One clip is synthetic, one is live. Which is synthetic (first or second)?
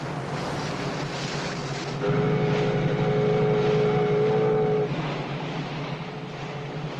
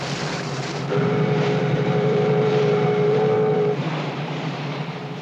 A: second